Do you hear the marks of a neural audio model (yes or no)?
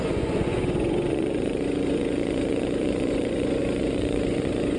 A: yes